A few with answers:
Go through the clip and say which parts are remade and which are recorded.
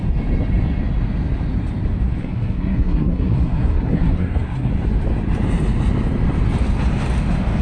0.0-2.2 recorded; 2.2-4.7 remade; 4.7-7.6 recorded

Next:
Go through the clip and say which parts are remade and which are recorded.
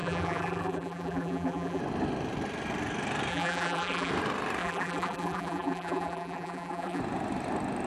0.0-1.8 remade; 1.8-3.3 recorded; 3.3-4.1 remade; 4.1-4.6 recorded; 4.6-7.0 remade; 7.0-7.9 recorded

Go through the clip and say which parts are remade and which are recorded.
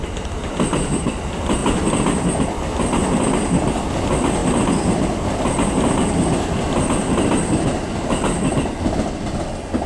0.0-9.9 recorded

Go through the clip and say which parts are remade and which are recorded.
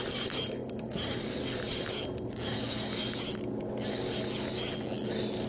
0.0-5.5 recorded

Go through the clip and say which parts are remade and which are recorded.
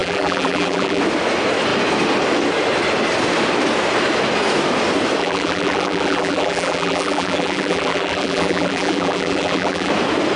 0.0-1.0 remade; 1.0-5.2 recorded; 5.2-9.9 remade; 9.9-10.4 recorded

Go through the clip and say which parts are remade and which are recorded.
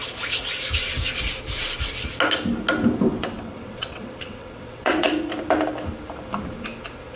0.0-3.2 recorded; 3.2-5.1 remade; 5.1-7.2 recorded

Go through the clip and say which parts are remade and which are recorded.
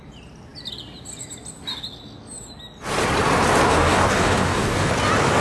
0.0-3.7 recorded; 3.7-4.9 remade; 4.9-5.4 recorded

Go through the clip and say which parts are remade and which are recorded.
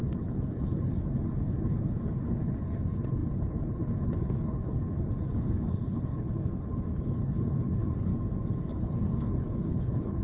0.0-8.1 remade; 8.1-8.6 recorded; 8.6-10.2 remade